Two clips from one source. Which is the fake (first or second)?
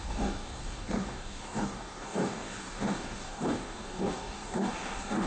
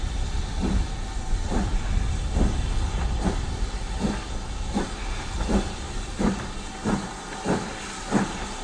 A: first